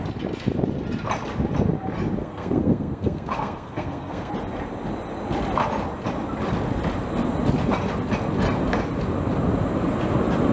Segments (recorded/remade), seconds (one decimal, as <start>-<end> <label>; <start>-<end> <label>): 0.0-2.2 recorded; 2.2-4.3 remade; 4.3-10.5 recorded